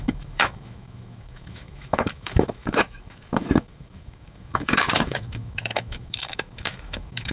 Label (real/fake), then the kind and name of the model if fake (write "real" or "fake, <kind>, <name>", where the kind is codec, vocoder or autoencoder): fake, autoencoder, DAC-VAE